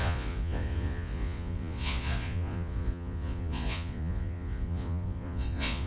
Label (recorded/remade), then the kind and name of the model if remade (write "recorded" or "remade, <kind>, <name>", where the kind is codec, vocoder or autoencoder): remade, vocoder, Vocos